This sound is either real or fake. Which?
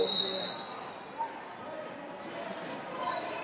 real